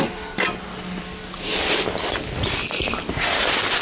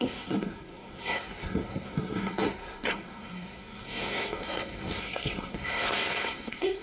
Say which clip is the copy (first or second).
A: second